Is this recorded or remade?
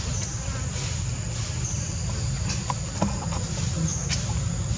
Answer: recorded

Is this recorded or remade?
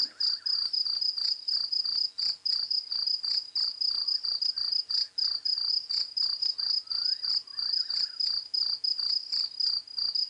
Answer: recorded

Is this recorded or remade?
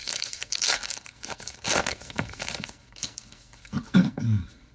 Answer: remade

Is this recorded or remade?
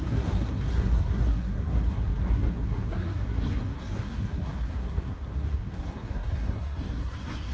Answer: remade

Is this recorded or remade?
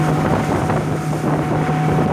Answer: recorded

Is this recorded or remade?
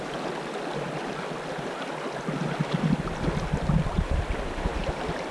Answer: recorded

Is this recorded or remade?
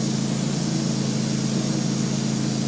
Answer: recorded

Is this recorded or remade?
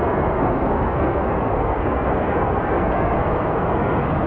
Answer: remade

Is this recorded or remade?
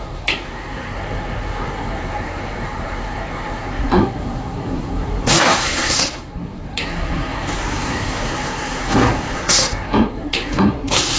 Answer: remade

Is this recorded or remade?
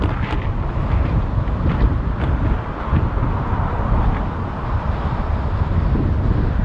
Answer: recorded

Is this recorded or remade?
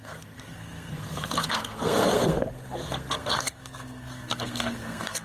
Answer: remade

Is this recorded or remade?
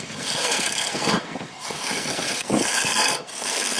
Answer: remade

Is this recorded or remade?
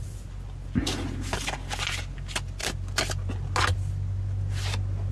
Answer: recorded